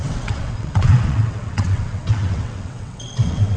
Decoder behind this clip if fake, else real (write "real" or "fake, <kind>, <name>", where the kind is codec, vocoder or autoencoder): fake, vocoder, WaveNeXt